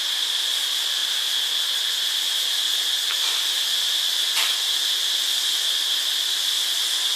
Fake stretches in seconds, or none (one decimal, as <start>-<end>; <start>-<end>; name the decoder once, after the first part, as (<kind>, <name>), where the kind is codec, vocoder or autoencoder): none